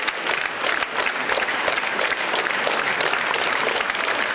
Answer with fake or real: fake